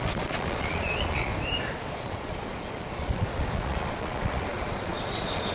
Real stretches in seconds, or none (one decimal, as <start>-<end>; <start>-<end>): 1.3-1.8